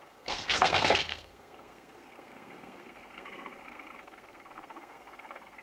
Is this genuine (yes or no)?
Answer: no